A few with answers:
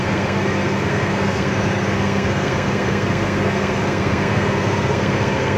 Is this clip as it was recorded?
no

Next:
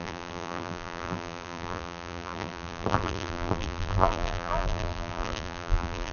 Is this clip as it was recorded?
no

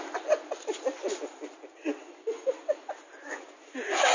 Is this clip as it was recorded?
yes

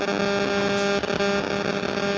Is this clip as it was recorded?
yes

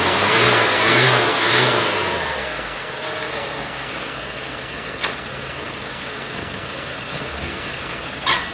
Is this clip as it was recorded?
no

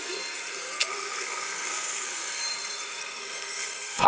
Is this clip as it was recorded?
no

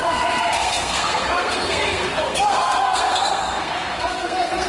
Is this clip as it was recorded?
no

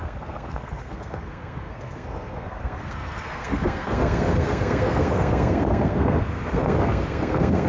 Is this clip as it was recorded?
no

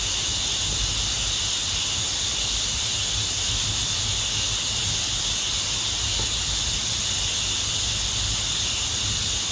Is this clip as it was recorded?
yes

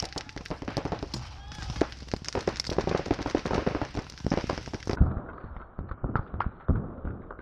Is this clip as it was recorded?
yes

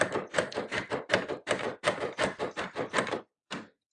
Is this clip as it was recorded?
no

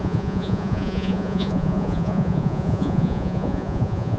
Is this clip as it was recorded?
no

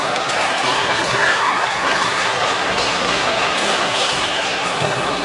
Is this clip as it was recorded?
no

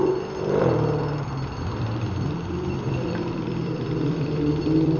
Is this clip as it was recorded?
no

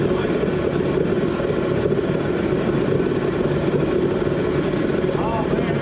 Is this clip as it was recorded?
yes